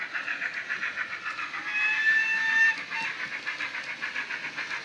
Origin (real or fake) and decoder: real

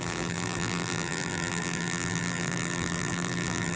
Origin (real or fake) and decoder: fake, vocoder, BigVGAN v2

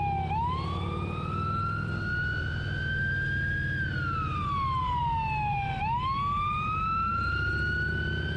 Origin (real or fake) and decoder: real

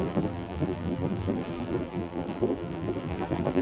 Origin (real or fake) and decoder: fake, vocoder, BigVGAN v2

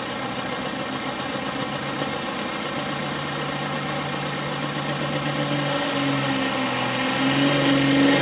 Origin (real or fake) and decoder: real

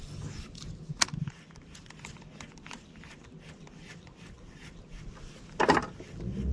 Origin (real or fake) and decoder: real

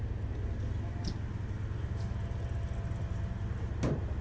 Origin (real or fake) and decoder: real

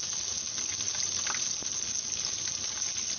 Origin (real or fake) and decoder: real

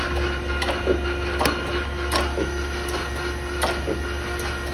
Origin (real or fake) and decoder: real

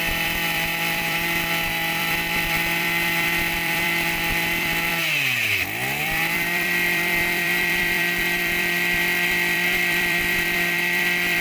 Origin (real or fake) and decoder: fake, vocoder, BigVGAN v2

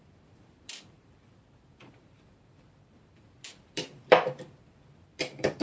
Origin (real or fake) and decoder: fake, vocoder, BigVGAN v2